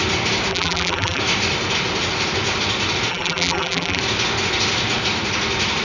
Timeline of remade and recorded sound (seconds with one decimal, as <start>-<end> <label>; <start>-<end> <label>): 0.0-0.5 recorded; 0.5-1.2 remade; 1.2-3.1 recorded; 3.1-4.0 remade; 4.0-5.8 recorded